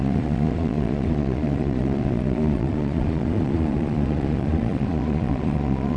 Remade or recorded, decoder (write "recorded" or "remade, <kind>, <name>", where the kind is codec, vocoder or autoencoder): remade, vocoder, Vocos